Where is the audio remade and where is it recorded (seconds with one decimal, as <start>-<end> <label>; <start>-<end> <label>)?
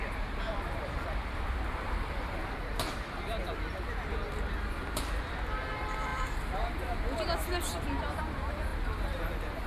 0.0-3.4 remade; 3.4-4.8 recorded; 4.8-8.7 remade; 8.7-9.2 recorded; 9.2-9.7 remade